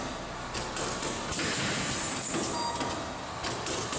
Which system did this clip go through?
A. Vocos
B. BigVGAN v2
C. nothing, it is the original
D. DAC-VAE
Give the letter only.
C